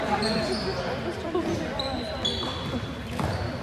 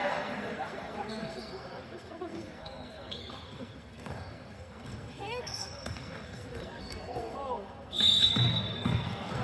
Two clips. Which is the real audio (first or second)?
first